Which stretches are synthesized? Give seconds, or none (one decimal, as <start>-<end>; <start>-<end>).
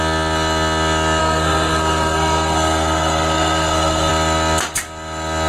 1.2-4.1